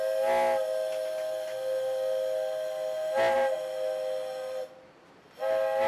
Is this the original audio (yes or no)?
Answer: yes